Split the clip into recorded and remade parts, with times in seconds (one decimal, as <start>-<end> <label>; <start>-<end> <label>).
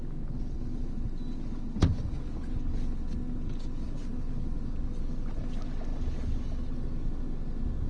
0.0-7.9 recorded